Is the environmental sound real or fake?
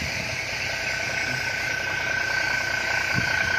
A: real